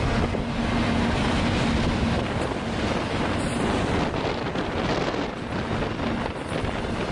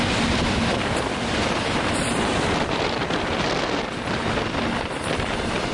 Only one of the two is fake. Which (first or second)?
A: second